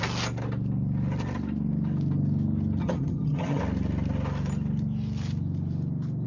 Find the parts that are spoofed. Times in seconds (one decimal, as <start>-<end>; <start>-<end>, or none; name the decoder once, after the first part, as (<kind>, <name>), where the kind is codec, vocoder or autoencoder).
2.8-3.6 (vocoder, HiFi-GAN)